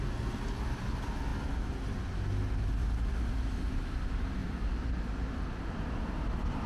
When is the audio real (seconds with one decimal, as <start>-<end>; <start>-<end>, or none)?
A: 0.0-6.7